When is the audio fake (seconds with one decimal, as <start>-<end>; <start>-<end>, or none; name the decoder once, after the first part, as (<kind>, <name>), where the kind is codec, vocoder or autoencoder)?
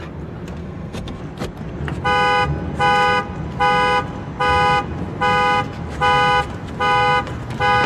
0.6-1.2 (codec, SNAC)